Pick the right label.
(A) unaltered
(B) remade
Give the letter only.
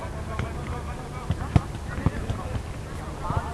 A